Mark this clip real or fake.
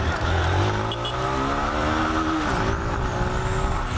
real